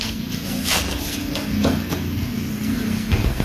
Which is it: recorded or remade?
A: remade